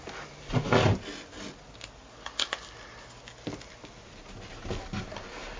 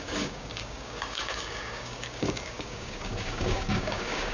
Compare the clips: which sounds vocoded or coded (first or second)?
second